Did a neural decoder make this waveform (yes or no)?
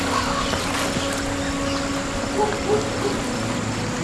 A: no